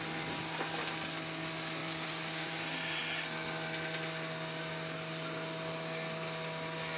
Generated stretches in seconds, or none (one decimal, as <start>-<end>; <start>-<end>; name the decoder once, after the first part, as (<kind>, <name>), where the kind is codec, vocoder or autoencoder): 1.8-3.0 (vocoder, BigVGAN v2)